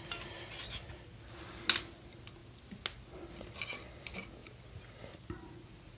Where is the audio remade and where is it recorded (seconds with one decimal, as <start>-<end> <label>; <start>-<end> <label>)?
0.0-6.0 recorded